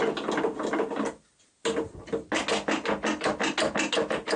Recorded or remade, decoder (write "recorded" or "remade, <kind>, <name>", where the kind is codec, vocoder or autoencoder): recorded